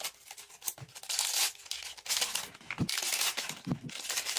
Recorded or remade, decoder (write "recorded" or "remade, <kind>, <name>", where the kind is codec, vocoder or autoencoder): recorded